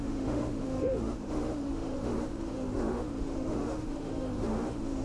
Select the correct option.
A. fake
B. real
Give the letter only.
A